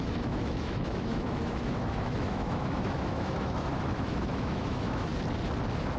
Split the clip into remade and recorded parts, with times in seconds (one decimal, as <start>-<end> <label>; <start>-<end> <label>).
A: 0.0-5.1 remade; 5.1-6.0 recorded